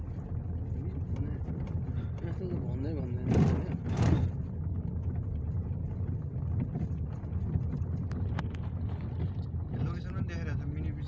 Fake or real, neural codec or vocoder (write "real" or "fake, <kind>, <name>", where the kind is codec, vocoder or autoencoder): real